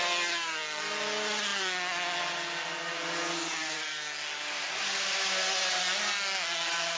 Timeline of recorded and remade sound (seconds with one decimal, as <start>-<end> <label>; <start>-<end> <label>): 0.0-7.0 recorded